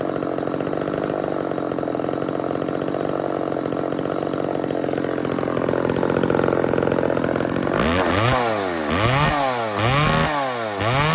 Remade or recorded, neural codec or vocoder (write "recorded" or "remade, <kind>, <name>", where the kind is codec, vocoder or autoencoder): recorded